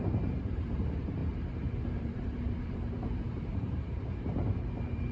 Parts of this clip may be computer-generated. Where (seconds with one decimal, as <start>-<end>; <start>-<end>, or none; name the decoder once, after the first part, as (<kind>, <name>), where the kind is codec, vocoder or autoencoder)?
0.0-1.2 (vocoder, BigVGAN v2); 2.0-5.1